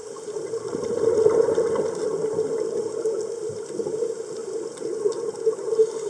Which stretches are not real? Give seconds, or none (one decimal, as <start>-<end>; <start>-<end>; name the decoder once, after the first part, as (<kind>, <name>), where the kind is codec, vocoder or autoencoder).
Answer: none